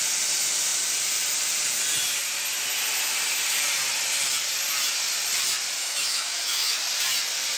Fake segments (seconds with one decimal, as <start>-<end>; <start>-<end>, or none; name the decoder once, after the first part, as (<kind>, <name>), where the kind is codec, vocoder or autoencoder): 5.8-6.8 (autoencoder, DAC-VAE)